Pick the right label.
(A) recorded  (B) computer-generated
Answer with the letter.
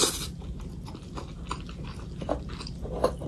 A